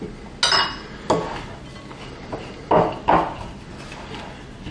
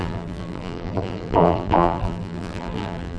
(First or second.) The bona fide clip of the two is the first